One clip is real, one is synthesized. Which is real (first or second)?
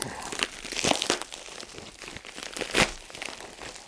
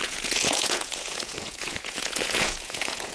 first